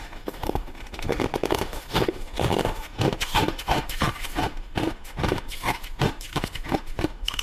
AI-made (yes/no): yes